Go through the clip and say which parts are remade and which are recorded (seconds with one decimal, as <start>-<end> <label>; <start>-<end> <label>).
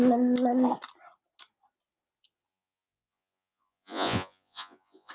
0.0-2.5 recorded; 2.5-5.1 remade